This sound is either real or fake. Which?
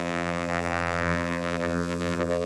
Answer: fake